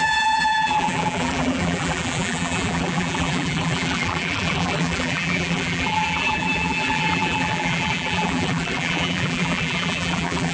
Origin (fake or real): fake